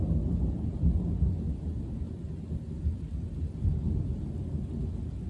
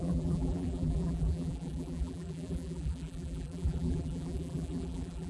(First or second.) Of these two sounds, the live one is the first